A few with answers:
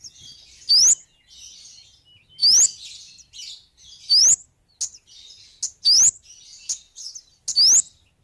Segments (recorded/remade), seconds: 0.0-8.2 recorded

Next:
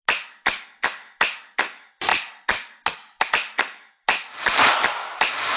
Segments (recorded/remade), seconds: 0.0-5.6 recorded

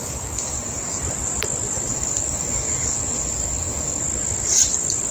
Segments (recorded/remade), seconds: 0.0-1.0 remade; 1.0-1.9 recorded; 1.9-4.0 remade; 4.0-5.1 recorded

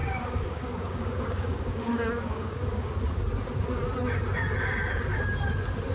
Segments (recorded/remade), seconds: 0.0-2.9 remade; 2.9-5.9 recorded

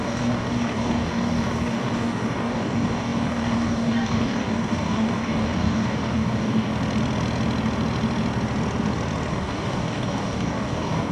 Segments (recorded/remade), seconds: 0.0-6.7 remade; 6.7-9.3 recorded; 9.3-11.1 remade

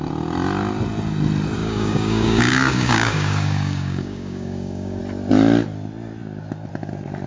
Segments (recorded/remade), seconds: 0.0-1.6 recorded; 1.6-5.0 remade; 5.0-7.3 recorded

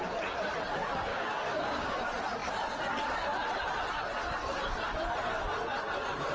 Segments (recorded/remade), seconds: 0.0-1.1 recorded; 1.1-1.9 remade; 1.9-6.3 recorded

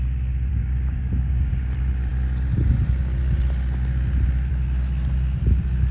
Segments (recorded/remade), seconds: 0.0-0.5 recorded; 0.5-1.5 remade; 1.5-5.9 recorded